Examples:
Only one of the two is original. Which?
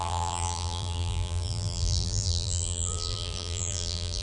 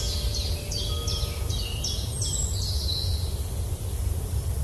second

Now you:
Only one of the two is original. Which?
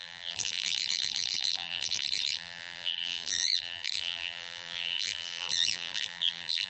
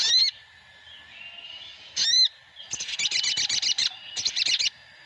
second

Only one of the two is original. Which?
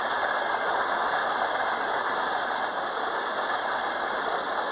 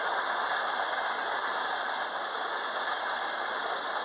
second